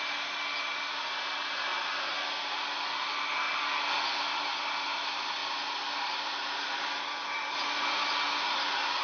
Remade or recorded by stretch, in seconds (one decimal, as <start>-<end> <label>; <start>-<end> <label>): 0.0-9.0 recorded